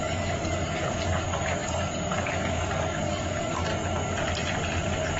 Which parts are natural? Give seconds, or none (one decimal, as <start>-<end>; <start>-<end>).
3.7-5.2